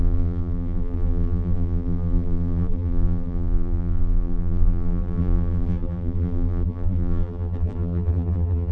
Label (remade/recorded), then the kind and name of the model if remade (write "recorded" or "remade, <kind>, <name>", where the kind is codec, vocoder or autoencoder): remade, vocoder, BigVGAN v2